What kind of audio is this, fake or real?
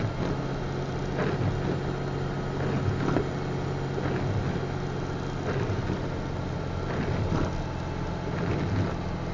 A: real